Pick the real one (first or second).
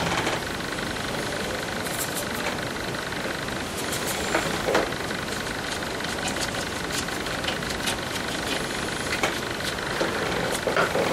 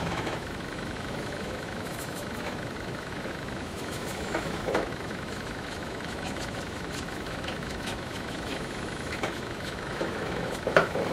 first